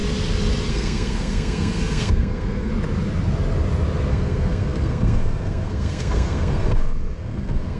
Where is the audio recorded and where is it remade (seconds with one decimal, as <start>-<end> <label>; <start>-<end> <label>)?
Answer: 0.0-0.7 recorded; 0.7-2.7 remade; 2.7-4.1 recorded; 4.1-7.8 remade